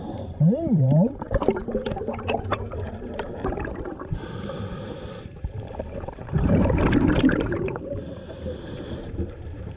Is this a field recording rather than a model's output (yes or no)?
no